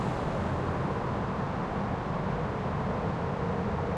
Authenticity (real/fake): real